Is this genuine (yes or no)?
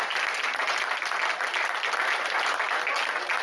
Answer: yes